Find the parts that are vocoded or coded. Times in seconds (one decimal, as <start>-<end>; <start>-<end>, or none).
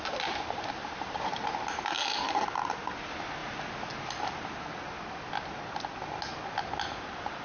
none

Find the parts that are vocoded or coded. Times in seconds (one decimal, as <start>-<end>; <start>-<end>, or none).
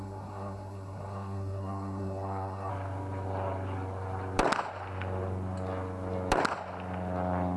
0.0-2.7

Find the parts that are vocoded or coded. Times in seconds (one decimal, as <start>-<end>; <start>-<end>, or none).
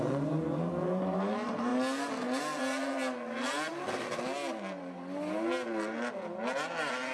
none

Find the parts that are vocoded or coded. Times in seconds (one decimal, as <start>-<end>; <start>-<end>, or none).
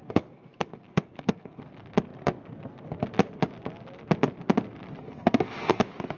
0.0-1.6; 5.0-5.8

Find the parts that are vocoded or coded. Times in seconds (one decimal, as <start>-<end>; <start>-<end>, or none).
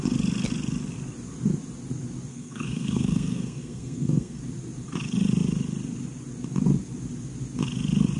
2.3-4.4